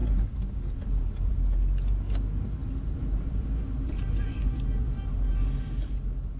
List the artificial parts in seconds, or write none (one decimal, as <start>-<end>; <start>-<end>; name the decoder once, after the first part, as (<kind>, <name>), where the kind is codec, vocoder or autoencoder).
none